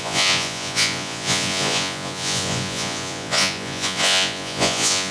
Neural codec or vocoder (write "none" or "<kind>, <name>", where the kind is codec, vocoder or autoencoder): vocoder, Vocos